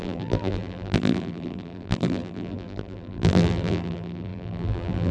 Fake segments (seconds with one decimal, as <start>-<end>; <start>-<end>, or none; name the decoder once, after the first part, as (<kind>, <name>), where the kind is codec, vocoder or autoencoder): 0.0-5.1 (vocoder, BigVGAN v2)